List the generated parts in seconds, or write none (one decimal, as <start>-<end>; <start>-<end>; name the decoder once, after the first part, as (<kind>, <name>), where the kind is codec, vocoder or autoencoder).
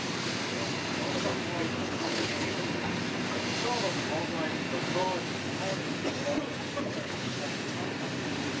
1.8-2.5 (codec, HILCodec); 6.8-7.4